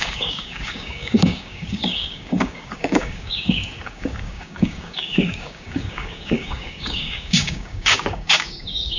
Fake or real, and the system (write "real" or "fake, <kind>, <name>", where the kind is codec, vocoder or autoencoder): fake, codec, DAC